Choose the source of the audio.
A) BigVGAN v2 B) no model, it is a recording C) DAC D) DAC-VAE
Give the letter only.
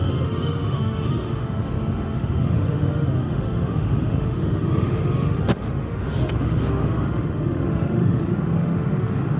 D